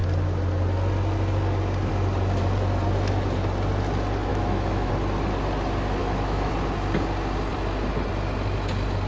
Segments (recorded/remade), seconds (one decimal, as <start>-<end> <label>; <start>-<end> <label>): 0.0-4.3 recorded; 4.3-4.9 remade; 4.9-6.0 recorded; 6.0-6.5 remade; 6.5-9.1 recorded